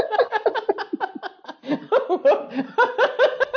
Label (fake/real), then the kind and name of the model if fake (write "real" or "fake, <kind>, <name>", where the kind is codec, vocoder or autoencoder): real